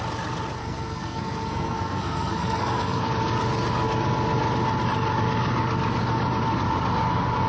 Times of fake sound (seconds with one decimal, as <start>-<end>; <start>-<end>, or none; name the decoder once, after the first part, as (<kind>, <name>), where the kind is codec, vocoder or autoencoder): 0.6-3.1 (codec, SNAC)